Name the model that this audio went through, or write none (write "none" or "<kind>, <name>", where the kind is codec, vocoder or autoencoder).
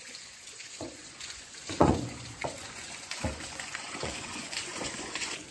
vocoder, Vocos